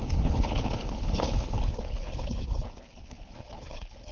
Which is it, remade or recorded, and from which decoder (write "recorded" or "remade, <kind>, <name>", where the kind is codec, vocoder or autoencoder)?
remade, codec, HILCodec